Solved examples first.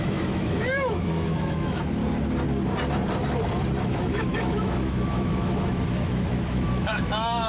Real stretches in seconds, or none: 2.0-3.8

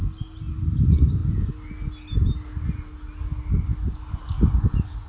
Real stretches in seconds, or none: 0.0-5.1

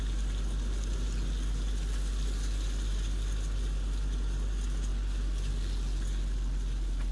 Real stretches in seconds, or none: 0.0-7.1